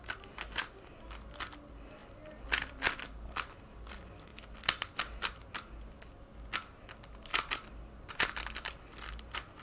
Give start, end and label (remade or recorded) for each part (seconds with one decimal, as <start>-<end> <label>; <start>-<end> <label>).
0.0-9.6 recorded